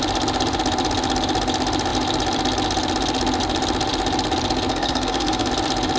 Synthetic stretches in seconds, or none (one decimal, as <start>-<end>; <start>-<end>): 4.7-5.5

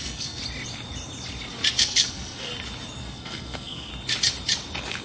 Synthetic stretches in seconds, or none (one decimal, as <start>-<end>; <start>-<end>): 0.0-0.4; 1.8-2.5; 3.0-3.9

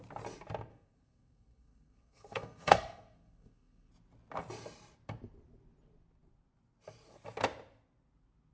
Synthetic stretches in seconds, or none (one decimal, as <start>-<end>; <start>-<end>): 0.7-3.9

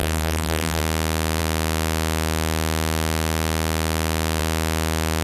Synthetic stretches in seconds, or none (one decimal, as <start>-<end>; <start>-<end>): 0.0-0.8